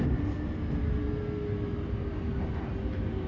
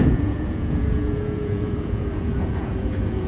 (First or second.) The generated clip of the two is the second